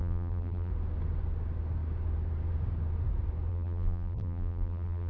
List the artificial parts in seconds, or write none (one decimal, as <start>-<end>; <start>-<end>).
0.0-0.7; 3.5-5.1